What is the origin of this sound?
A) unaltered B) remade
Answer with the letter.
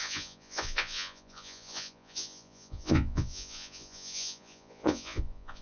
B